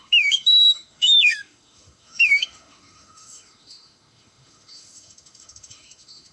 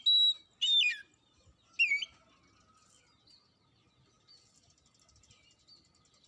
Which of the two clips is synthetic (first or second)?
first